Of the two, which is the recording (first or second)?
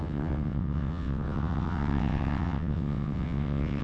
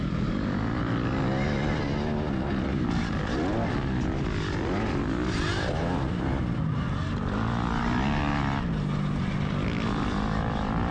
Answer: second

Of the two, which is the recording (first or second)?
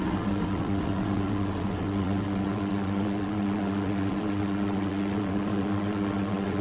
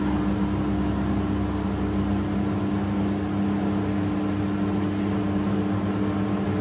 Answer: second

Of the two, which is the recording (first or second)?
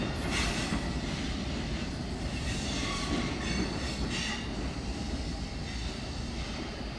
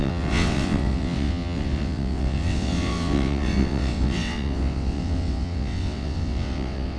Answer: first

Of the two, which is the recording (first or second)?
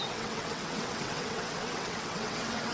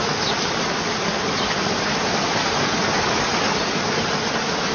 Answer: second